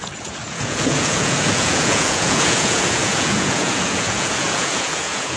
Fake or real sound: fake